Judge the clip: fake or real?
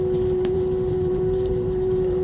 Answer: fake